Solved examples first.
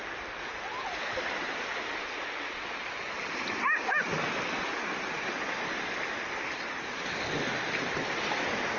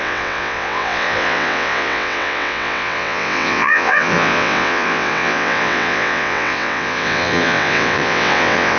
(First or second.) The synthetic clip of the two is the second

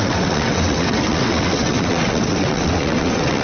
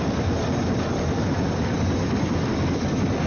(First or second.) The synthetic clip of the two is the first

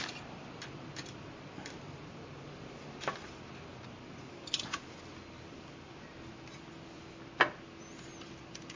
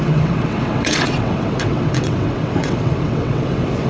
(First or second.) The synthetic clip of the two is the second